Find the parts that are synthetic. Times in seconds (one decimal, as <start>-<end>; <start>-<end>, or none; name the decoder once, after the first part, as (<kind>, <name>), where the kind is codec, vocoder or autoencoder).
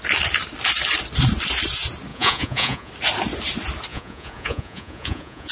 2.1-2.9 (vocoder, Vocos); 3.9-5.5